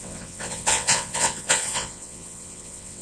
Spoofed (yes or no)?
yes